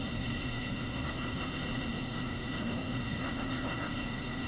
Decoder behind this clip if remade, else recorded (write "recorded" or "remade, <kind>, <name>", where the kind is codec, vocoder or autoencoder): remade, codec, SNAC